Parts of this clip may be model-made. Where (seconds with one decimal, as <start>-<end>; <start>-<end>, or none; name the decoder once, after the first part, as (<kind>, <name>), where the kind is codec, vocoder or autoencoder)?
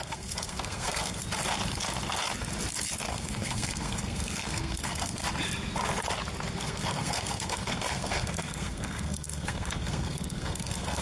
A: 0.0-1.2 (codec, SNAC); 3.1-5.2; 6.6-11.0